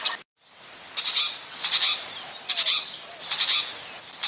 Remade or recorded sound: recorded